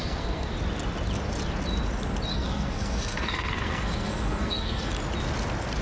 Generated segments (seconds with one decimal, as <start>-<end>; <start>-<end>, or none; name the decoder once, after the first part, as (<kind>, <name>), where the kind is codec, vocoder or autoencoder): 0.0-0.5 (codec, SNAC); 2.3-4.9